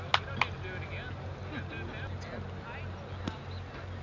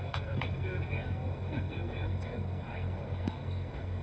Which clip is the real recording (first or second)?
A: first